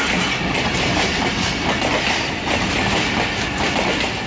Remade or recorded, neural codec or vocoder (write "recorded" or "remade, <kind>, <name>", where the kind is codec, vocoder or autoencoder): recorded